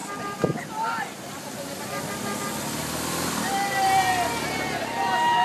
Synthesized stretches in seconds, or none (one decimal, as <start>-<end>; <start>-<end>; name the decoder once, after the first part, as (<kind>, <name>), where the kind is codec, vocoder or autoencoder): none